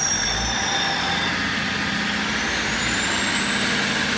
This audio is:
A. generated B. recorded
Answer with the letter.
B